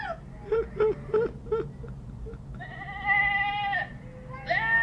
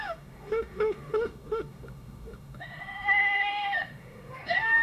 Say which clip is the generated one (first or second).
second